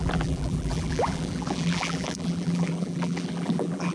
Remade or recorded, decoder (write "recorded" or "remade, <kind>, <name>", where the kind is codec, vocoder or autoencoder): remade, vocoder, BigVGAN v2